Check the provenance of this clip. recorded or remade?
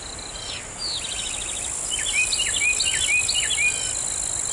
recorded